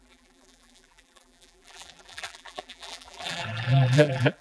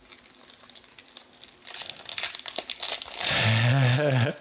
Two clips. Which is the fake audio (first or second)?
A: first